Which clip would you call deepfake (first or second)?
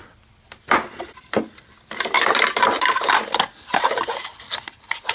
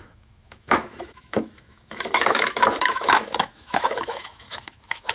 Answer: second